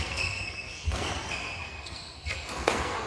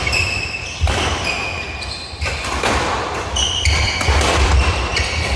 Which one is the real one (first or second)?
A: second